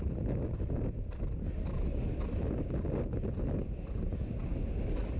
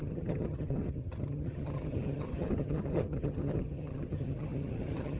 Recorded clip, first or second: first